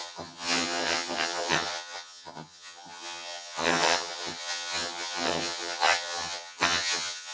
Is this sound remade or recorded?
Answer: remade